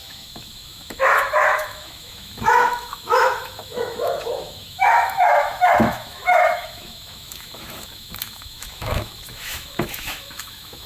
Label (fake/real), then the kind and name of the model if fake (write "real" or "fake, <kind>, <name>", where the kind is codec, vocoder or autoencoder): fake, autoencoder, DAC-VAE